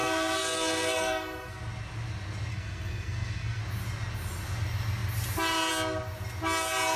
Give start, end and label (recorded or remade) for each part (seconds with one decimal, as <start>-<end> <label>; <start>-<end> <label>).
0.0-1.6 remade; 1.6-2.5 recorded; 2.5-3.6 remade; 3.6-7.0 recorded